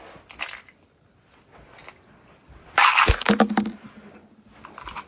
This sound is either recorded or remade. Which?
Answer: recorded